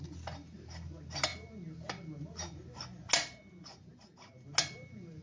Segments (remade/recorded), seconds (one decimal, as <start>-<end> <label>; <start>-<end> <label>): 0.0-5.2 recorded